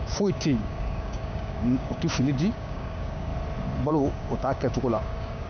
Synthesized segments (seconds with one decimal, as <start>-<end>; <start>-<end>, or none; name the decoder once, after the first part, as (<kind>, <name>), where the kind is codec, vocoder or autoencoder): 0.0-3.3 (codec, DAC); 3.9-5.5